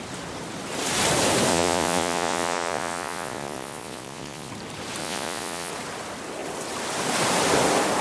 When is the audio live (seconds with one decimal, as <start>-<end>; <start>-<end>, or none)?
0.0-1.5; 4.5-5.0; 5.7-8.0